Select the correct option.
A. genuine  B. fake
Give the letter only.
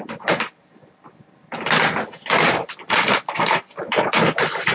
A